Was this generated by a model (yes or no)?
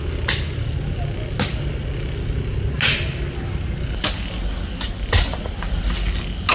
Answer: no